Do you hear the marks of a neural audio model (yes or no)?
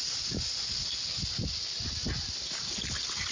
no